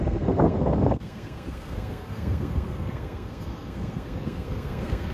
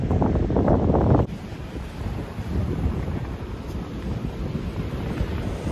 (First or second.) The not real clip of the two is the first